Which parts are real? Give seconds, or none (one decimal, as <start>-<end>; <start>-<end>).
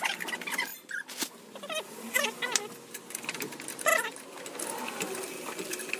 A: 0.0-6.0